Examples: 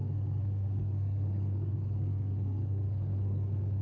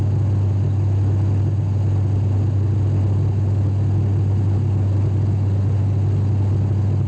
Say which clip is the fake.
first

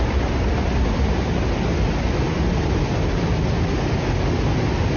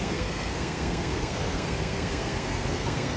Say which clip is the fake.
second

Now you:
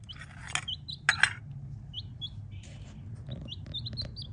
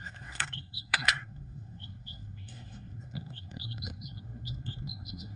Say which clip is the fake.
second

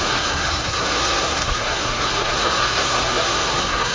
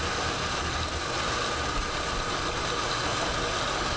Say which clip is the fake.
first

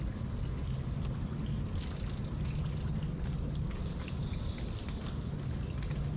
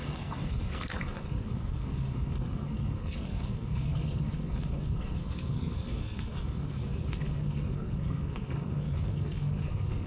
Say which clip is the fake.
second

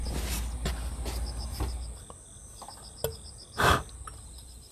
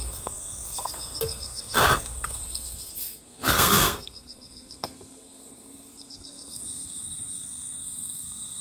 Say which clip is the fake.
second